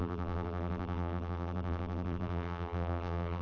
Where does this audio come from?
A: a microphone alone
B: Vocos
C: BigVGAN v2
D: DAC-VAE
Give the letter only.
C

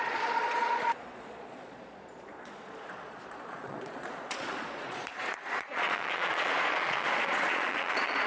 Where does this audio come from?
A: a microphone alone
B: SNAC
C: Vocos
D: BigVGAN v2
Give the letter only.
C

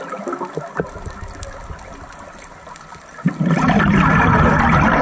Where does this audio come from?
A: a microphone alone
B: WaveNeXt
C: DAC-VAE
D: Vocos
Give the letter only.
A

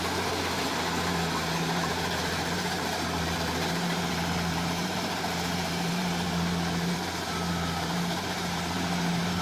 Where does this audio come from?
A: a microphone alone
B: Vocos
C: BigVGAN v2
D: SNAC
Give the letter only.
C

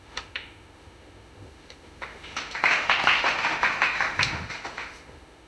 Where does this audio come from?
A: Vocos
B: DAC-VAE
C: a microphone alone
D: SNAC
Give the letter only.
B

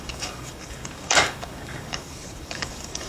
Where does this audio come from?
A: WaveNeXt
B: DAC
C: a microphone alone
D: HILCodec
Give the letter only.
B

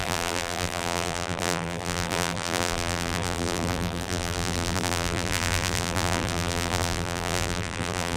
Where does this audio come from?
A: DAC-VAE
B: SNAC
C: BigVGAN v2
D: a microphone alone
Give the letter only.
C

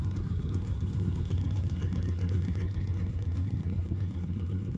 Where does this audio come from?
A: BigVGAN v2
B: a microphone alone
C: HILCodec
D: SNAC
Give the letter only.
D